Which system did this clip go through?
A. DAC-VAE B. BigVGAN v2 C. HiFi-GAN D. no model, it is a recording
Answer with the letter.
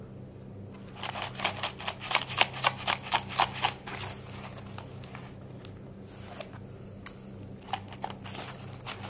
D